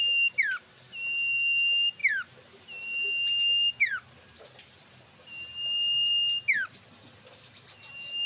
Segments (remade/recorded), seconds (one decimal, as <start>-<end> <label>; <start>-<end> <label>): 0.0-8.3 recorded